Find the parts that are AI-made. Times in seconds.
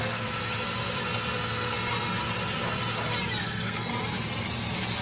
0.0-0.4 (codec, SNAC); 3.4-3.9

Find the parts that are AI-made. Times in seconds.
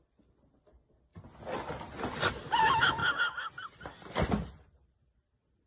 none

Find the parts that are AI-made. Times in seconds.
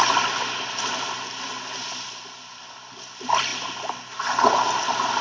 none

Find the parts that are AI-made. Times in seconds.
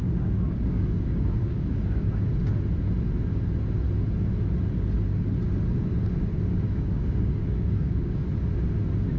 0.0-2.1 (codec, DAC); 6.3-8.3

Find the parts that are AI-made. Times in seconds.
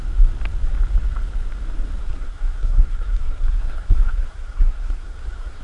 2.0-5.6 (codec, SNAC)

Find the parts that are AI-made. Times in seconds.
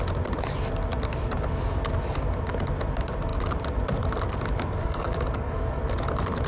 4.8-5.8 (codec, DAC)